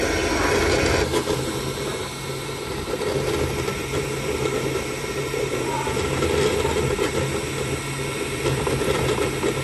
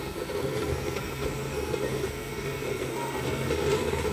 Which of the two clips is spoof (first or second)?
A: second